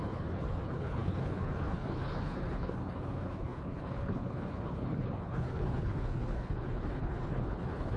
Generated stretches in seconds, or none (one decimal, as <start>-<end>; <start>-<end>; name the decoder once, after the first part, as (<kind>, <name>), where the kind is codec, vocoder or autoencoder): 0.0-8.0 (codec, HILCodec)